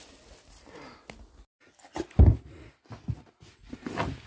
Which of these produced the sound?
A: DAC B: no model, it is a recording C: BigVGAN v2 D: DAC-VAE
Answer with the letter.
B